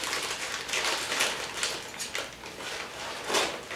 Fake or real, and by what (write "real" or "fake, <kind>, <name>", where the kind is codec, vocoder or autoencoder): real